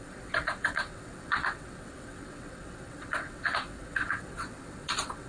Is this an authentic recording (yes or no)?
no